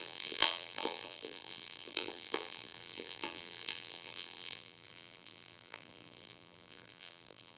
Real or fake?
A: fake